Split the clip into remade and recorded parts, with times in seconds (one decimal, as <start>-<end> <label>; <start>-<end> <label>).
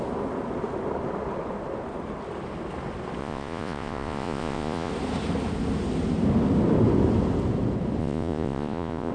0.0-3.2 recorded; 3.2-4.9 remade; 4.9-8.0 recorded; 8.0-9.1 remade